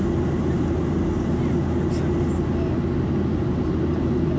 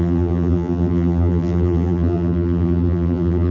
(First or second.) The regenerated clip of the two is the second